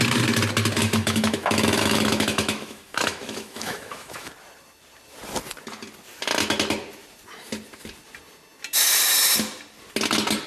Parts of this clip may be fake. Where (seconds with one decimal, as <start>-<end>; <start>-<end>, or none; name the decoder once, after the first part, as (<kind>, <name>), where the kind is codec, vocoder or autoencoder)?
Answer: 0.8-4.3 (autoencoder, DAC-VAE)